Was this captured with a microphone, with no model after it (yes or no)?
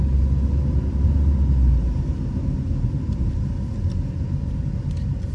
yes